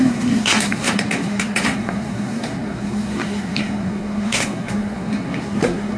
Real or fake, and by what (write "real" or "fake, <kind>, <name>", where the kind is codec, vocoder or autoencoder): fake, codec, SNAC